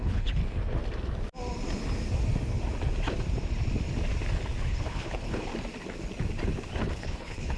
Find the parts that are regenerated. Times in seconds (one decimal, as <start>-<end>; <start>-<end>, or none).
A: 0.0-0.4; 4.6-5.5; 6.9-7.6